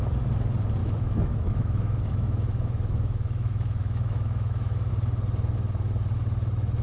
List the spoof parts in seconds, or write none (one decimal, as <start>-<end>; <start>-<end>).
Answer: 0.8-4.9